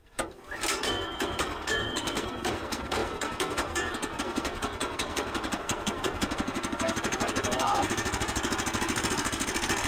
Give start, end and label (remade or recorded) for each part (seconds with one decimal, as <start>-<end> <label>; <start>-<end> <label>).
0.0-9.9 remade

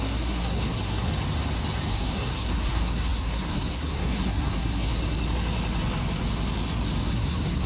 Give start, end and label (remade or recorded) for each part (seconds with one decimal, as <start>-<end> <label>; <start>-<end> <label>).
0.0-1.1 remade; 1.1-1.9 recorded; 1.9-5.0 remade; 5.0-7.1 recorded; 7.1-7.7 remade

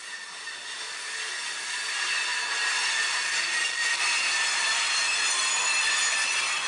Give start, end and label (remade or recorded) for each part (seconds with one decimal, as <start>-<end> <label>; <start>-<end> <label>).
0.0-6.7 recorded

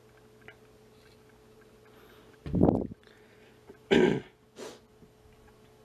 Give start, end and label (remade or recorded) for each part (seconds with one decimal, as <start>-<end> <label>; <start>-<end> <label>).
0.0-2.4 recorded; 2.4-4.5 remade; 4.5-5.8 recorded

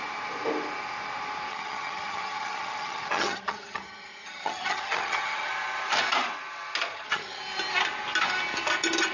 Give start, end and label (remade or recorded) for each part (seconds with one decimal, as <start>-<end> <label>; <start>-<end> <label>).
0.0-1.5 recorded; 1.5-5.5 remade; 5.5-6.9 recorded; 6.9-7.4 remade; 7.4-9.1 recorded

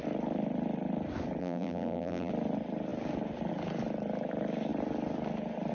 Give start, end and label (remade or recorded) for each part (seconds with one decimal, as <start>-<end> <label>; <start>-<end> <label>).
0.0-1.4 recorded; 1.4-2.3 remade; 2.3-5.7 recorded

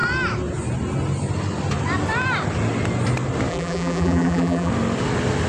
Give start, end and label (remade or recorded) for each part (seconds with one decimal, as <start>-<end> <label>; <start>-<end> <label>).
0.0-3.5 recorded; 3.5-4.7 remade; 4.7-5.5 recorded